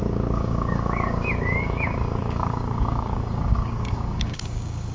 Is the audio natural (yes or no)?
no